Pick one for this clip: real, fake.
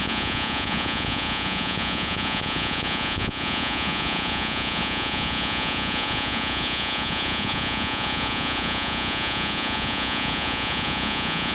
fake